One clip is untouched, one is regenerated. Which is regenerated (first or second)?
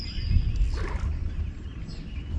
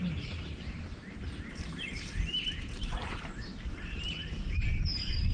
second